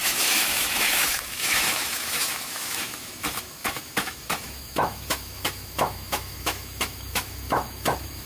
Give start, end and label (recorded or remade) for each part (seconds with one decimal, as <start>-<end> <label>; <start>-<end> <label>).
0.0-8.3 remade